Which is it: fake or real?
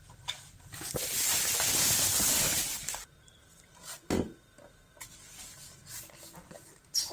real